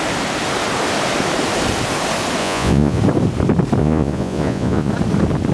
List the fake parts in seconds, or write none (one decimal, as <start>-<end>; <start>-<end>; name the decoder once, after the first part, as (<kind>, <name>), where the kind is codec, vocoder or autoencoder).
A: 2.4-3.0 (vocoder, Vocos); 3.8-4.9